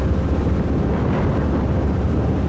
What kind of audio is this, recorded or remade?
recorded